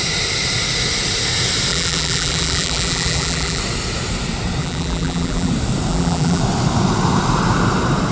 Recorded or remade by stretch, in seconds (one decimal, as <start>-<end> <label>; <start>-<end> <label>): 0.0-1.7 recorded; 1.7-3.6 remade; 3.6-4.6 recorded; 4.6-5.5 remade; 5.5-5.9 recorded; 5.9-6.4 remade; 6.4-8.1 recorded